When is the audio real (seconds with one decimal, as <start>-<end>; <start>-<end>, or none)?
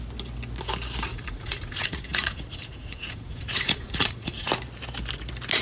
0.0-1.1; 4.5-5.6